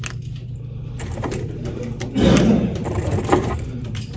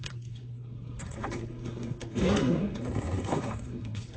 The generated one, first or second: second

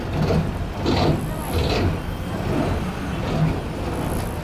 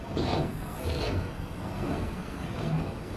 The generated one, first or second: second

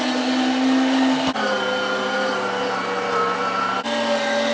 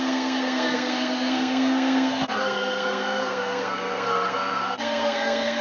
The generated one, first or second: second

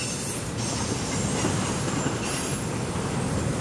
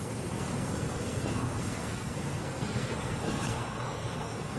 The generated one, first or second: second